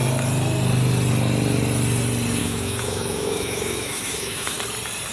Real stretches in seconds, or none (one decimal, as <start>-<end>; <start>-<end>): 0.0-2.4; 4.6-5.1